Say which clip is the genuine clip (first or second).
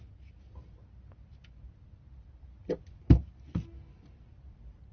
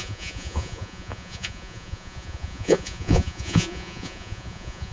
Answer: first